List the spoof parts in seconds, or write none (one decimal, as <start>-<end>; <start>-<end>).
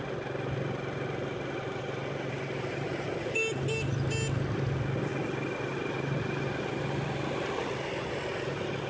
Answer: none